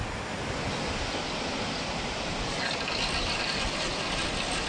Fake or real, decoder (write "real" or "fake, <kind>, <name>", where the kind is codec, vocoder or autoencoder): real